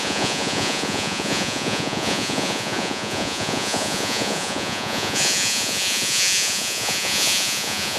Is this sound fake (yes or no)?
yes